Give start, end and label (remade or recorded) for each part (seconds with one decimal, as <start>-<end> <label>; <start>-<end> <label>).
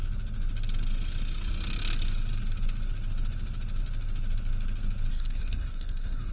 0.0-5.1 recorded; 5.1-6.3 remade